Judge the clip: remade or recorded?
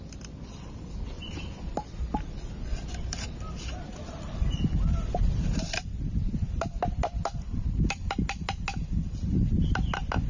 recorded